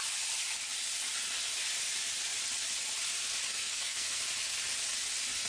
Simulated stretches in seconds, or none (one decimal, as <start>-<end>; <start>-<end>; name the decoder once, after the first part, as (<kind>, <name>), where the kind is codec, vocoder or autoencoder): 3.5-4.2 (codec, SNAC)